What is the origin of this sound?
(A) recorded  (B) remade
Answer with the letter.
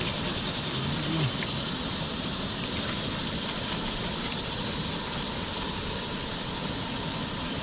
A